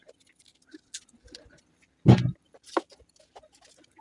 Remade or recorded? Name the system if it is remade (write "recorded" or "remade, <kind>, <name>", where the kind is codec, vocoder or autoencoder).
recorded